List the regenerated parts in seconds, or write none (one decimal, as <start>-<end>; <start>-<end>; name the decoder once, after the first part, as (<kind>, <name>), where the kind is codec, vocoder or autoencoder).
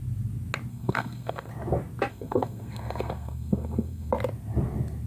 0.7-1.5 (codec, SNAC); 2.1-4.1